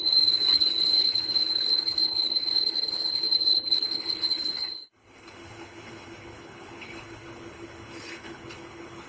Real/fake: fake